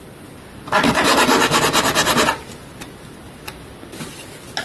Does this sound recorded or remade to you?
recorded